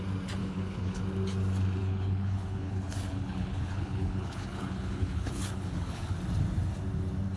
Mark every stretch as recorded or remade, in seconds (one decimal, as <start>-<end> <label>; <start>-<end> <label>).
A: 0.0-0.4 recorded; 0.4-1.0 remade; 1.0-1.8 recorded; 1.8-6.2 remade; 6.2-7.4 recorded